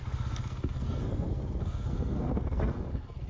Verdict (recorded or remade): remade